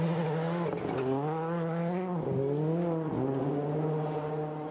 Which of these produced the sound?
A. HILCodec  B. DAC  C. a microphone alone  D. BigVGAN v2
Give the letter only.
C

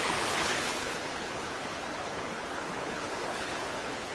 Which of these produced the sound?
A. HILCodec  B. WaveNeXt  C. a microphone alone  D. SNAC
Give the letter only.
A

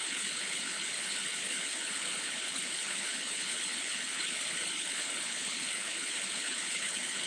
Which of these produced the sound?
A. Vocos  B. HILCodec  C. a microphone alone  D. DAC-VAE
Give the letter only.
B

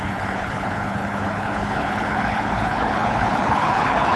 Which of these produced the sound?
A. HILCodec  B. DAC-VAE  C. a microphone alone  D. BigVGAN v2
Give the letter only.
A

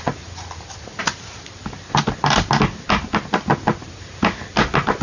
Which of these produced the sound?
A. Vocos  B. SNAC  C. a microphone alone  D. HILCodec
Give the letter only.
C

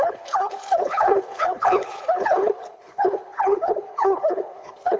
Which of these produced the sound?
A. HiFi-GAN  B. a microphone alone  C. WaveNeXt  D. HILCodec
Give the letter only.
D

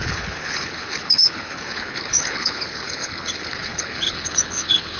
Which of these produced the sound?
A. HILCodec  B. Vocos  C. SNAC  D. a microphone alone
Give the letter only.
A